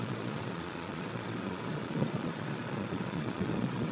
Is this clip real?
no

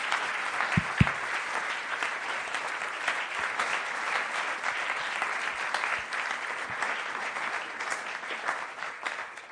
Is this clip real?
yes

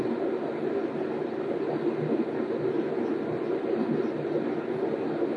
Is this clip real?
yes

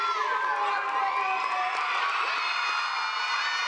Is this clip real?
yes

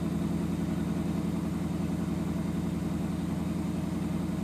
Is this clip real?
yes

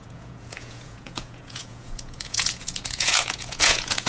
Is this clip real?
no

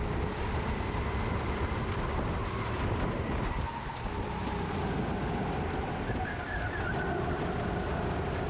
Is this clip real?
yes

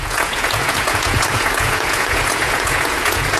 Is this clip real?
no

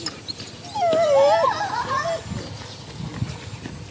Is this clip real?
yes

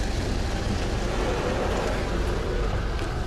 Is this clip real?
yes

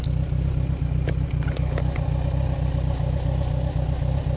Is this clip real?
yes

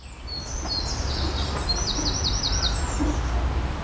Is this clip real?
yes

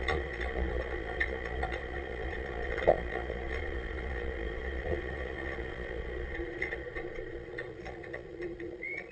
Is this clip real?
no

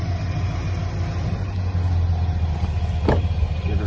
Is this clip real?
yes